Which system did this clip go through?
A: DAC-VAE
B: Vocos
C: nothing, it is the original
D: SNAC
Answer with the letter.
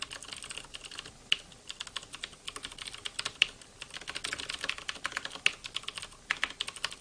C